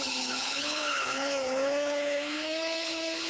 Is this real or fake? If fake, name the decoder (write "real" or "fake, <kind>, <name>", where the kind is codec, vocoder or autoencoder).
fake, codec, HILCodec